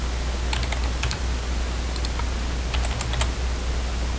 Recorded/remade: recorded